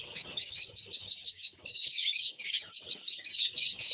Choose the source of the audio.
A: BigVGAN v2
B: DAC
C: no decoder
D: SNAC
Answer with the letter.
B